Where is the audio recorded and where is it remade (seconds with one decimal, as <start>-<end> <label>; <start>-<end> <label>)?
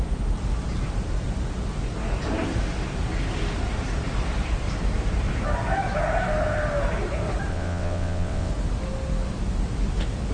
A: 0.0-7.5 recorded; 7.5-8.5 remade; 8.5-10.3 recorded